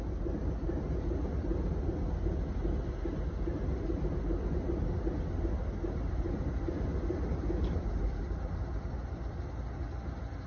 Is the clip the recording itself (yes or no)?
yes